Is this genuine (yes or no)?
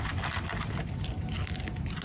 yes